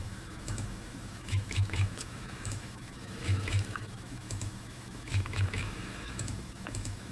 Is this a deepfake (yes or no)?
yes